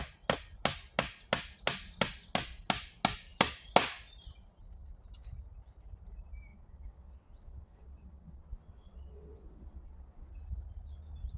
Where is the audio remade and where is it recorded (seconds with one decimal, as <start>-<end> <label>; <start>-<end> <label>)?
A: 0.0-6.5 recorded; 6.5-10.3 remade; 10.3-11.4 recorded